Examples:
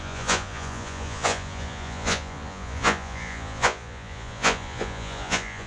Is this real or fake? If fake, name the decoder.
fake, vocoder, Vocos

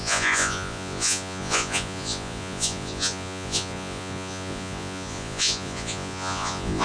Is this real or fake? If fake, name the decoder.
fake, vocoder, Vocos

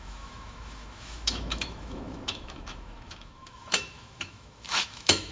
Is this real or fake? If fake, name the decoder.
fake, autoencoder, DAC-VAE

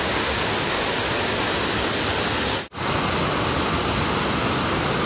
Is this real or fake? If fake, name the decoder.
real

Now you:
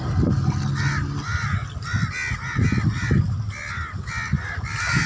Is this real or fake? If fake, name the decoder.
real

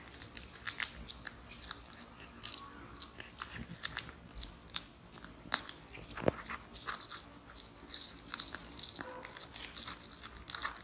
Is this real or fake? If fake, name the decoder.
real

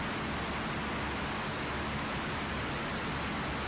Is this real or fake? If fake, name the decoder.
real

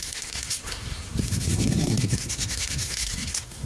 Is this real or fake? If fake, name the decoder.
fake, codec, SNAC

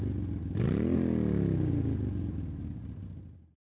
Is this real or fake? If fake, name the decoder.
real